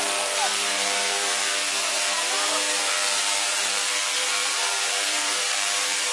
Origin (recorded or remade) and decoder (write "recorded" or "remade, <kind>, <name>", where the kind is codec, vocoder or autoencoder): remade, vocoder, BigVGAN v2